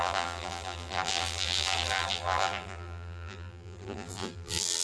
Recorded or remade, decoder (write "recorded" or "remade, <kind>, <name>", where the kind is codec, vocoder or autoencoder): remade, vocoder, BigVGAN v2